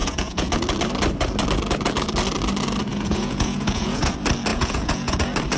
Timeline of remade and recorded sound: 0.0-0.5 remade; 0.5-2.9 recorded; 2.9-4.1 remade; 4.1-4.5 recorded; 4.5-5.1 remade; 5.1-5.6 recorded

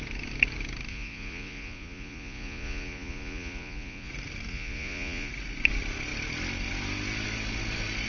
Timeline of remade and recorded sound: 0.0-0.9 recorded; 0.9-4.1 remade; 4.1-4.5 recorded; 4.5-5.3 remade; 5.3-8.1 recorded

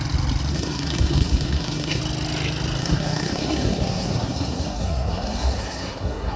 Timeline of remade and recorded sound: 0.0-0.5 recorded; 0.5-2.0 remade; 2.0-2.8 recorded; 2.8-6.4 remade

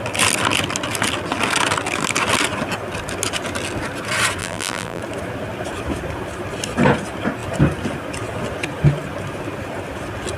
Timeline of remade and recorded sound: 0.0-4.4 recorded; 4.4-5.0 remade; 5.0-10.4 recorded

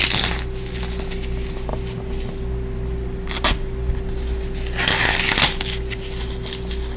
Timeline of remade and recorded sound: 0.0-7.0 recorded